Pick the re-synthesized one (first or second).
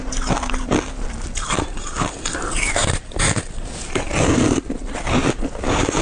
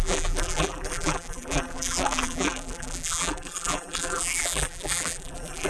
second